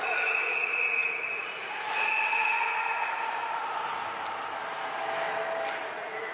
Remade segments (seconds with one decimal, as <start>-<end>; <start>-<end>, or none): 0.0-2.5; 5.8-6.3